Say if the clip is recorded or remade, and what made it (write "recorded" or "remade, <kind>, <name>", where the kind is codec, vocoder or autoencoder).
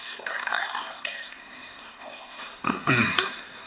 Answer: remade, codec, SNAC